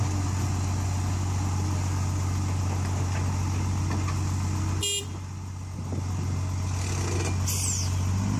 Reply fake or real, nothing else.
real